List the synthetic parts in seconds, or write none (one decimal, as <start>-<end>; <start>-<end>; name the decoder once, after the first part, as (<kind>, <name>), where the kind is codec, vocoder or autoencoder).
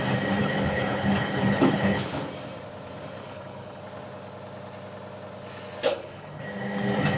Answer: 0.4-2.1 (codec, HILCodec); 3.2-3.8; 5.9-6.4